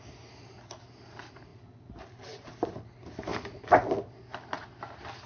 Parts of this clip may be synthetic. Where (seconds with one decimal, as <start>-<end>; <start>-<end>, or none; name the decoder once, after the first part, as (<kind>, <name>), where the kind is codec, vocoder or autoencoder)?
none

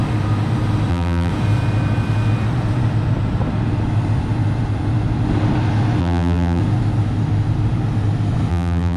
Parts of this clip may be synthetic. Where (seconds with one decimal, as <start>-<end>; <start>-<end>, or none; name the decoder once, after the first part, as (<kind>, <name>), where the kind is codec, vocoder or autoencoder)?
0.9-1.3 (vocoder, BigVGAN v2); 6.0-6.6; 8.5-9.0